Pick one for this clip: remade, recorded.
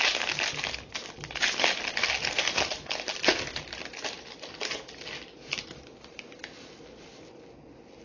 recorded